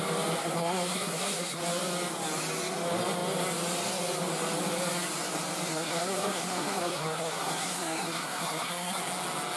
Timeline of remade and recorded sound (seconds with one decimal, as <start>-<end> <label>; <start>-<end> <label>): 0.0-0.4 recorded; 0.4-1.6 remade; 1.6-5.7 recorded; 5.7-9.0 remade; 9.0-9.6 recorded